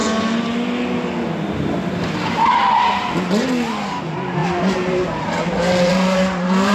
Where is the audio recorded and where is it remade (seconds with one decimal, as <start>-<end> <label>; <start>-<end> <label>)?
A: 0.0-4.0 recorded; 4.0-6.7 remade